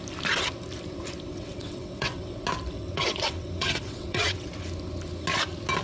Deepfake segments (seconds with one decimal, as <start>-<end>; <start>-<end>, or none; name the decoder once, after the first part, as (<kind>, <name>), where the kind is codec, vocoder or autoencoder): 1.3-2.4 (vocoder, WaveNeXt); 2.8-4.5